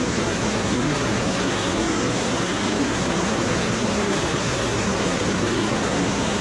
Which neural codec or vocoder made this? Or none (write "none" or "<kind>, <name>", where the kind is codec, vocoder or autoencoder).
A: codec, SNAC